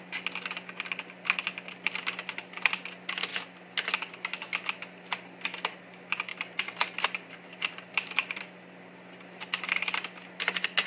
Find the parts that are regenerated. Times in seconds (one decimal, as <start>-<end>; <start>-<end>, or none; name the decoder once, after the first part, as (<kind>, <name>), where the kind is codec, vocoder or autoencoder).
6.3-8.4 (vocoder, BigVGAN v2)